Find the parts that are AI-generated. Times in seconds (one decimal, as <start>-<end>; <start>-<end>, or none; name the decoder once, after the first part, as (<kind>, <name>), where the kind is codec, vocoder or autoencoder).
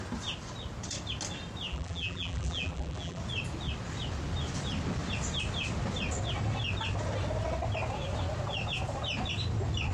1.7-3.2 (vocoder, BigVGAN v2)